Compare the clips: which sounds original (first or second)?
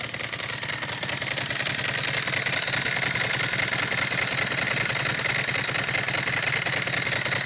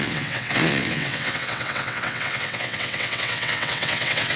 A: first